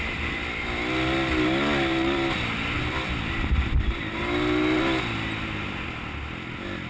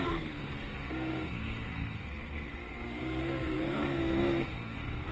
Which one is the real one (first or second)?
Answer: first